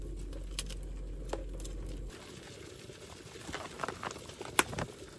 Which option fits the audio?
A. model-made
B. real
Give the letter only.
B